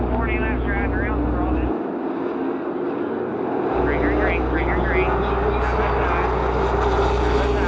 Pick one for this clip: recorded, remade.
recorded